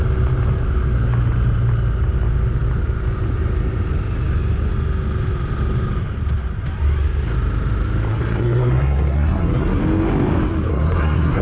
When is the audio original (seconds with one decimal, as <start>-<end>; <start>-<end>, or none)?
0.0-8.1; 9.8-10.7